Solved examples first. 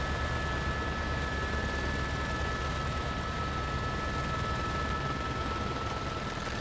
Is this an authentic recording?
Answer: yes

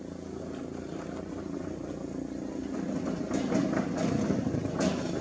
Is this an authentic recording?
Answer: yes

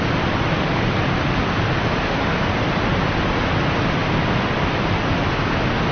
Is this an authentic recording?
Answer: yes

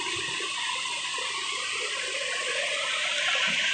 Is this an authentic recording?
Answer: yes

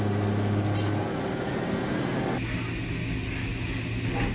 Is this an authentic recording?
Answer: yes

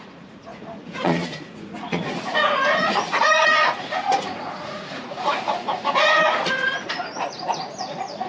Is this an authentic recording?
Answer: no